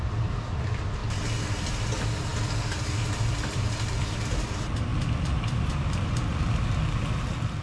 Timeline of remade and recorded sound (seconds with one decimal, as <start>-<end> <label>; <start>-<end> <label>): 0.0-1.0 remade; 1.0-1.9 recorded; 1.9-2.3 remade; 2.3-3.1 recorded; 3.1-7.6 remade